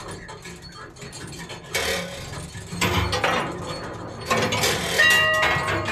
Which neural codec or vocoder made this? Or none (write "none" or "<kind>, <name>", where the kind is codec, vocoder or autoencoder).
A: none